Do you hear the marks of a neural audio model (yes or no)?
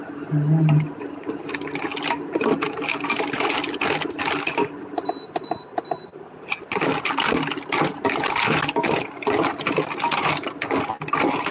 no